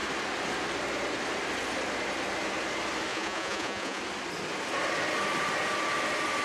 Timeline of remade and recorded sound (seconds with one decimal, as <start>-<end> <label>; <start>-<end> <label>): 0.0-3.1 recorded; 3.1-4.0 remade; 4.0-6.4 recorded